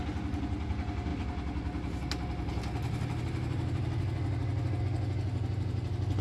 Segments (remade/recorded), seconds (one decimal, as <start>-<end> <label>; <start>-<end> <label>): 0.0-6.2 recorded